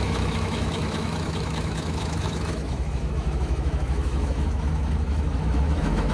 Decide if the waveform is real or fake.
fake